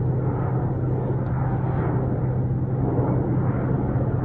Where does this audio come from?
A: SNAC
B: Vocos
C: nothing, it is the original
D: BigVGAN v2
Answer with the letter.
C